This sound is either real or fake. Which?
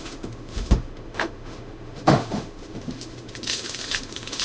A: fake